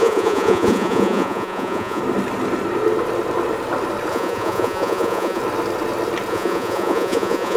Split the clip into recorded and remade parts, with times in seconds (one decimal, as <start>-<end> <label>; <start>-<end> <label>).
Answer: 0.0-2.0 remade; 2.0-4.1 recorded; 4.1-5.4 remade; 5.4-6.3 recorded; 6.3-7.6 remade